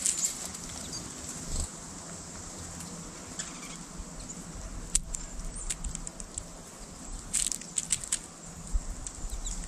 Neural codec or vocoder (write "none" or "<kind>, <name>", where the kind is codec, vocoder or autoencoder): none